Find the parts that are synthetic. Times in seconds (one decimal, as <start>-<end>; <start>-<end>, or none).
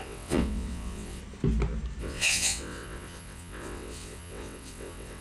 0.0-1.2; 2.0-5.2